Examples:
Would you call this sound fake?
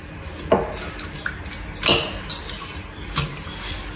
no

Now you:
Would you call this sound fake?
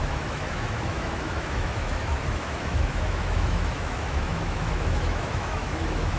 yes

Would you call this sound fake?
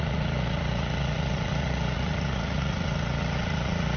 yes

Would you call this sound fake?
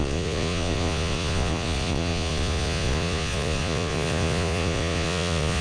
yes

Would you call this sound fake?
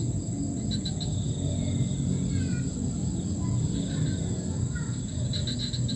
no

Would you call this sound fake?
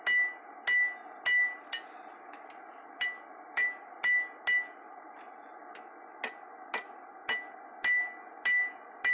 no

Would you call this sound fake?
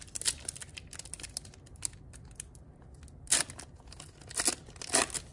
no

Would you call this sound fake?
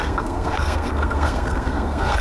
yes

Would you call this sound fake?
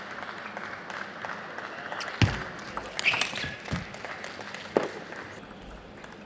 no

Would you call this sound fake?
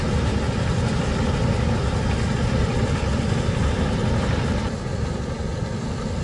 no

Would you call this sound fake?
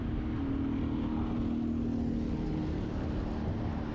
no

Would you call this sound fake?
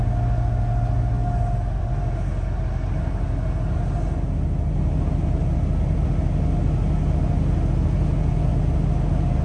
no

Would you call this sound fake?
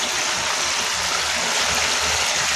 no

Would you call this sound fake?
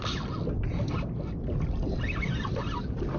no